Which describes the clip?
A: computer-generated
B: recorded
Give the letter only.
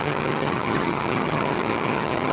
A